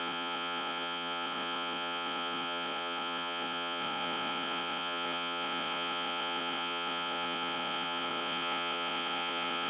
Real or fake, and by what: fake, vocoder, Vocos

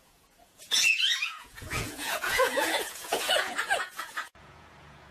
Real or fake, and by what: fake, vocoder, Vocos